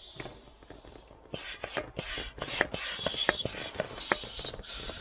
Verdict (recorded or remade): recorded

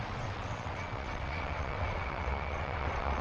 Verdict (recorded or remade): remade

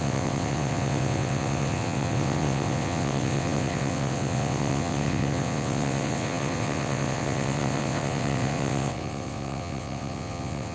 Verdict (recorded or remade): remade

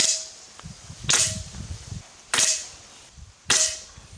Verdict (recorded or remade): recorded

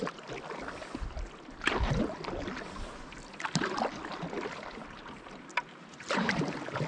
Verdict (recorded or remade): recorded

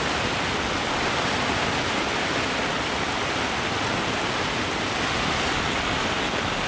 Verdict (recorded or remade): recorded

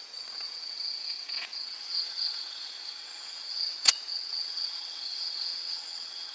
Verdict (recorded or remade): remade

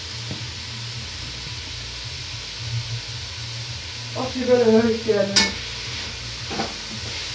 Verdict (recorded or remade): recorded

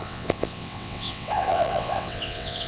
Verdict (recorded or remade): remade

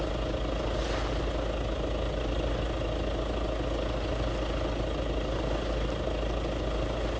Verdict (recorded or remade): recorded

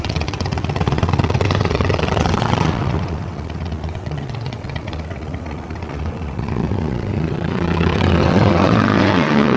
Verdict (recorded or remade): remade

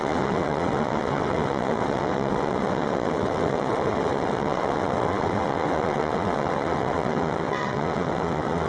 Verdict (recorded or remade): remade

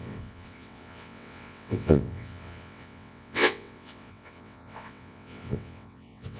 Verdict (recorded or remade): remade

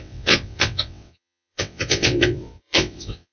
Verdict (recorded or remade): remade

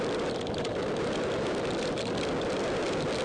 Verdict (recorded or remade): recorded